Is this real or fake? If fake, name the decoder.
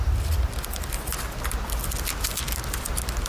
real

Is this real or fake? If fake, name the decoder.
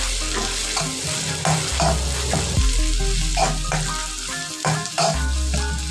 real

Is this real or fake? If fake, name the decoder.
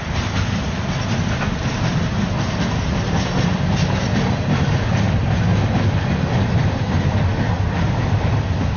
real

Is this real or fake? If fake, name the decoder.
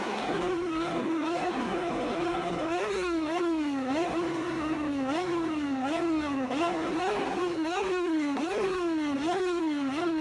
fake, codec, SNAC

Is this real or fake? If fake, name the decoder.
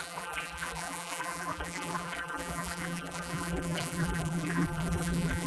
fake, vocoder, BigVGAN v2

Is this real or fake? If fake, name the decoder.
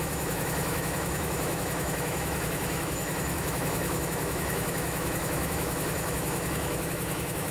fake, autoencoder, DAC-VAE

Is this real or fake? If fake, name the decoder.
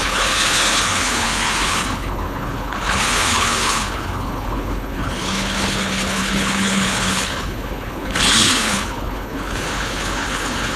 fake, codec, HILCodec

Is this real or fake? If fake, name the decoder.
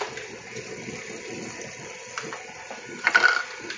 real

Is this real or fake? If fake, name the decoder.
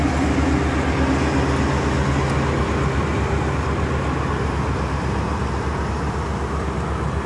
real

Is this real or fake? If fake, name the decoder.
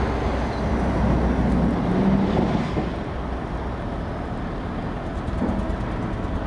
real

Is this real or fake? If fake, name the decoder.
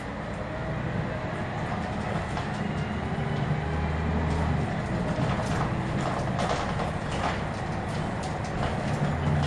real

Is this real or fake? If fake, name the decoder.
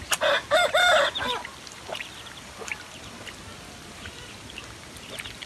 real